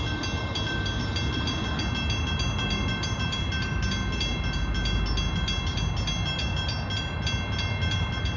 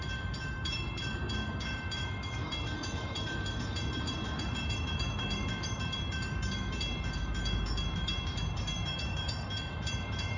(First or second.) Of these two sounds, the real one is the first